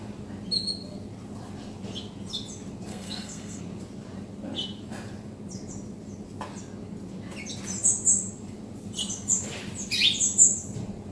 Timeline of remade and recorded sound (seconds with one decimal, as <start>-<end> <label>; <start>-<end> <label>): 0.0-2.9 recorded; 2.9-3.6 remade; 3.6-11.1 recorded